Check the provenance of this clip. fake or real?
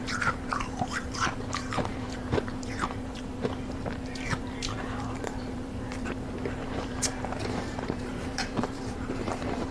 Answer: fake